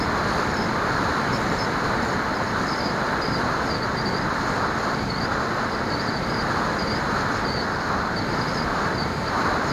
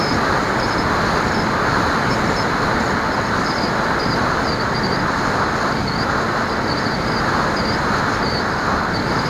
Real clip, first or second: second